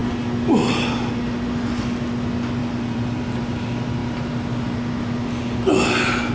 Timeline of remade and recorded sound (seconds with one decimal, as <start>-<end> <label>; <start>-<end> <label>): 0.0-2.6 recorded; 2.6-3.4 remade; 3.4-6.3 recorded